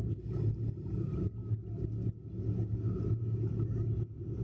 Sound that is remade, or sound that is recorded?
recorded